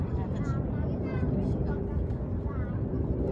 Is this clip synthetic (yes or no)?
yes